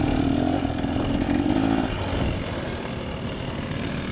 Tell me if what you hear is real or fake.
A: real